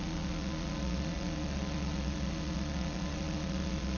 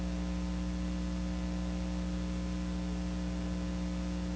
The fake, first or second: first